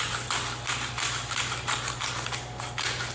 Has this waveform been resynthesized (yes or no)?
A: no